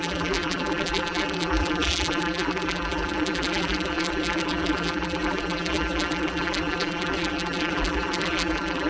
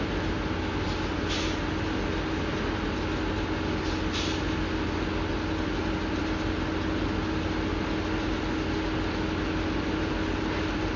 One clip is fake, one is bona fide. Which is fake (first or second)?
first